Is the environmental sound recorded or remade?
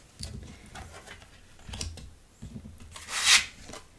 recorded